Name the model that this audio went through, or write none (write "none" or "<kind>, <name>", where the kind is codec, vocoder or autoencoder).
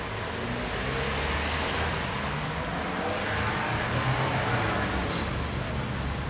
none